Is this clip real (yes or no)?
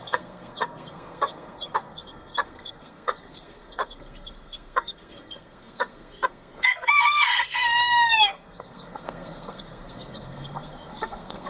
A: no